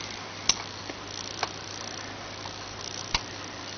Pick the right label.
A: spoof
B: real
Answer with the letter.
B